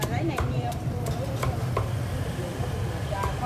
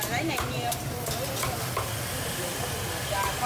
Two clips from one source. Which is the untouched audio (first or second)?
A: second